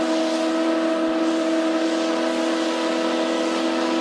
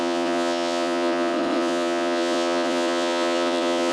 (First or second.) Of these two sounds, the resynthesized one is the second